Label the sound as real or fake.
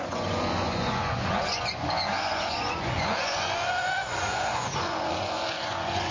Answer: fake